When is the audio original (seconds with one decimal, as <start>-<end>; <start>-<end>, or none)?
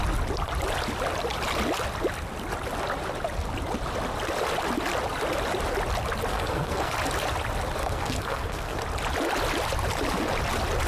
0.0-6.3; 6.9-7.8; 8.8-10.9